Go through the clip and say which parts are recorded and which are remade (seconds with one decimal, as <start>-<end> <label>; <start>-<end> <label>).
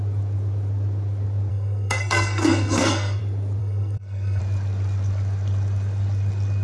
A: 0.0-1.5 recorded; 1.5-3.2 remade; 3.2-3.6 recorded; 3.6-4.4 remade; 4.4-6.6 recorded